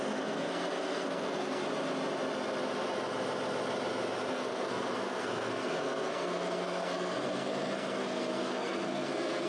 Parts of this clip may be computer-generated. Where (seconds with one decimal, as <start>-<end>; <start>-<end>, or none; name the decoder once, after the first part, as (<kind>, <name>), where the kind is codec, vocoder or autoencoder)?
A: 0.0-1.6 (codec, SNAC); 4.3-9.5